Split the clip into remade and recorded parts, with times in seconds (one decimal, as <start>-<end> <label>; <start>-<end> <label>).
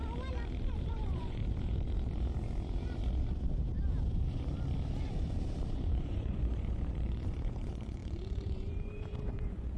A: 0.0-0.9 recorded; 0.9-1.4 remade; 1.4-5.7 recorded; 5.7-9.8 remade